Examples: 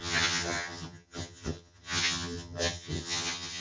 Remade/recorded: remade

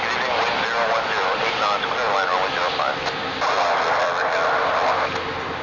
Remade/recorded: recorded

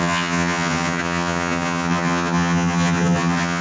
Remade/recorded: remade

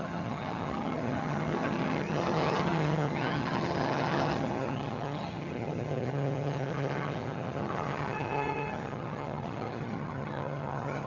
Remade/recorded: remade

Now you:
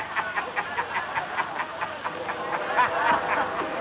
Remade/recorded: recorded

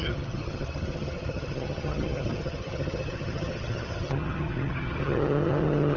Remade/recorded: remade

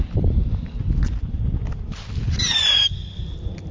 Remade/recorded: recorded